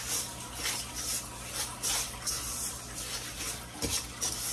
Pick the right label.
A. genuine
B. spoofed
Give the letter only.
A